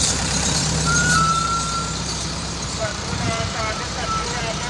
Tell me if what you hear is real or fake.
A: fake